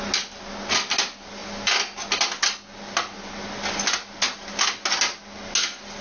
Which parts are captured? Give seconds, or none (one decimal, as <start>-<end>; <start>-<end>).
0.0-6.0